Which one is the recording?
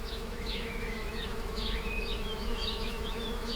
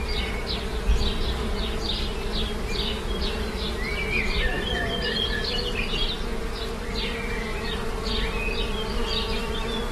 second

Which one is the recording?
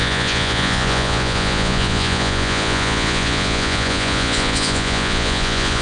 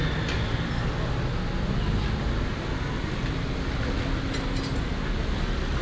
second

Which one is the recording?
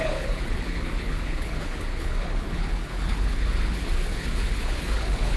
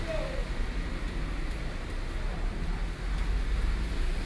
second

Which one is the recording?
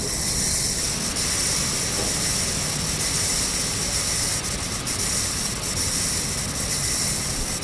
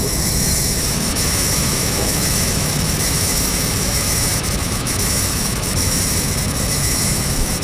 first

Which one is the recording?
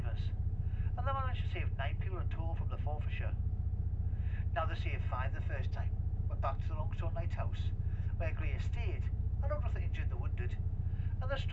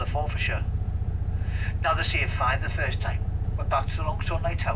first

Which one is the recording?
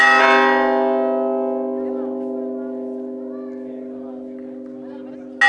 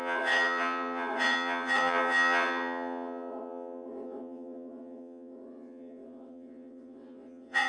first